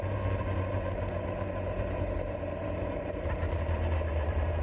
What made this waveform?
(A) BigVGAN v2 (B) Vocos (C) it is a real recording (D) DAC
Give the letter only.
A